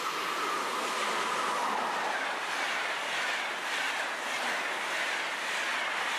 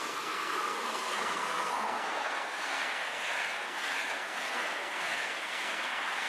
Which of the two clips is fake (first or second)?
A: second